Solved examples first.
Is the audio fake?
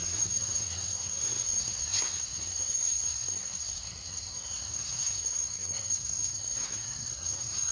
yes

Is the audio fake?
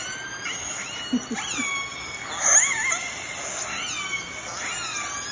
no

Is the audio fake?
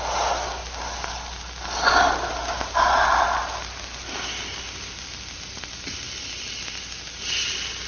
no